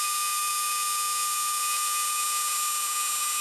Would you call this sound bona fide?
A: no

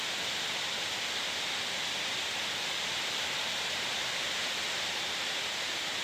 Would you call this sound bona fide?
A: yes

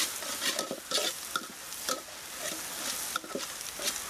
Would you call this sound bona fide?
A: yes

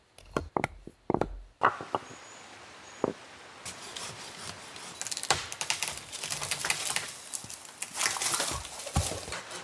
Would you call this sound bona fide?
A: yes